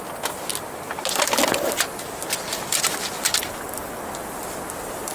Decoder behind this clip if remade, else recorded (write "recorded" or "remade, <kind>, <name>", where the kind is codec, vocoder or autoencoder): recorded